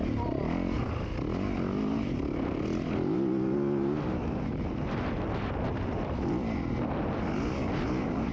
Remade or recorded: recorded